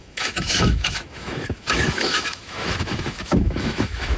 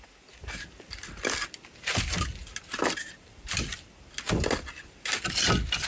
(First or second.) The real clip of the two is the second